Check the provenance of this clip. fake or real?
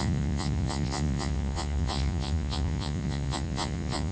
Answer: fake